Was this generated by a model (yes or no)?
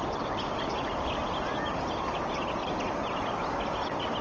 no